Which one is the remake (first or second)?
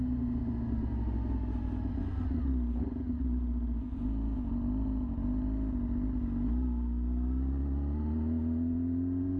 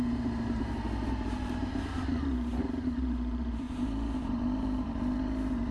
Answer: second